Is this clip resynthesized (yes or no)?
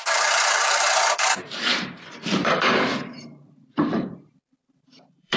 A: yes